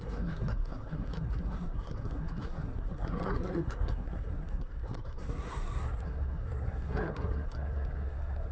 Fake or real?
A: fake